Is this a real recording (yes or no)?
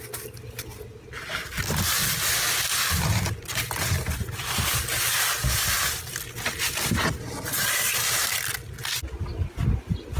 yes